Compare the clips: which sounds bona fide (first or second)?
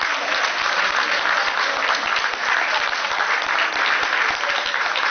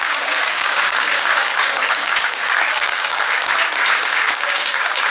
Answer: first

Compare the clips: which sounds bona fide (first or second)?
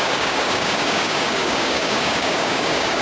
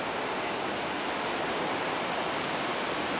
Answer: second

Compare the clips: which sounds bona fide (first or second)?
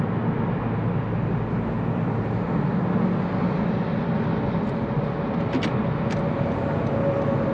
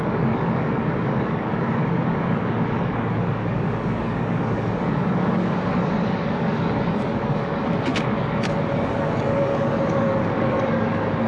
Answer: first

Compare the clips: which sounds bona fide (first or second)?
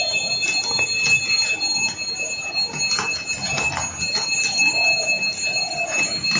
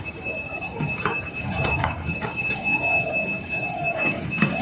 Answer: first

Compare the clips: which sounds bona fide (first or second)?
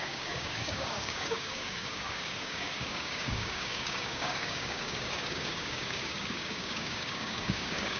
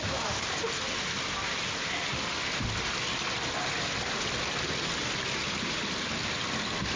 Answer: second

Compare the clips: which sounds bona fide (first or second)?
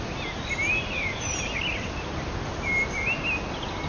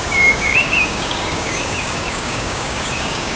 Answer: first